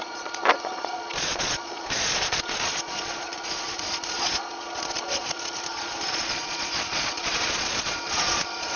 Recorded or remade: remade